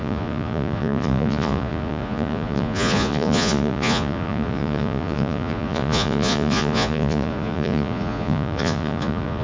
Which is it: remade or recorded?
remade